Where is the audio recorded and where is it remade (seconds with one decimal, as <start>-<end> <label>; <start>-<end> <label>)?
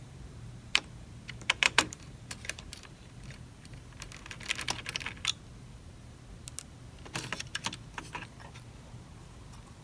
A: 0.0-3.1 remade; 3.1-9.8 recorded